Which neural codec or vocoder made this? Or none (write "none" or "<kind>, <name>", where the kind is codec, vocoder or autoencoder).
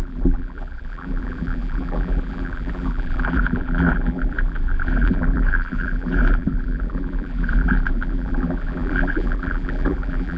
vocoder, BigVGAN v2